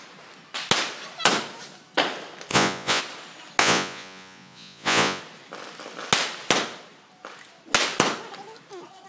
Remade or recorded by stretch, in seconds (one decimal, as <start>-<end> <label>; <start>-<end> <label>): 0.0-2.5 recorded; 2.5-3.0 remade; 3.0-3.6 recorded; 3.6-5.2 remade; 5.2-9.1 recorded